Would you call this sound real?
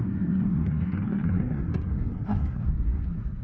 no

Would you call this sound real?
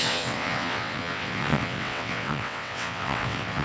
no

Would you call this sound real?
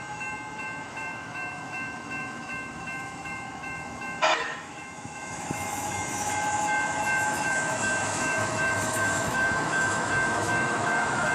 no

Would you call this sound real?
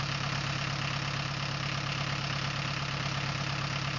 yes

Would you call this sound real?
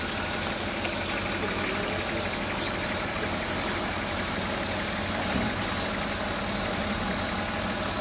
yes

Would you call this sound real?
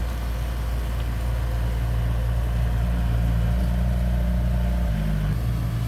yes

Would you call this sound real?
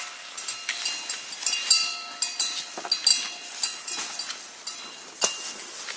yes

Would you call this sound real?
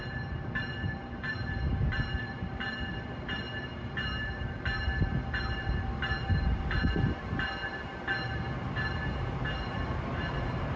no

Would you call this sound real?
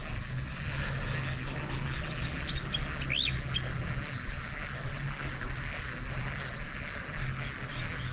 yes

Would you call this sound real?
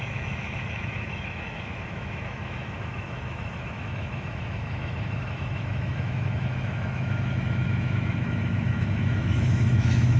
no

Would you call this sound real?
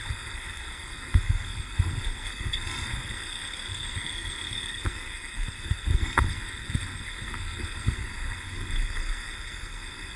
no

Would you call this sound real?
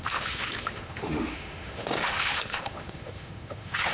no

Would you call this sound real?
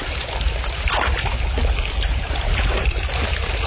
yes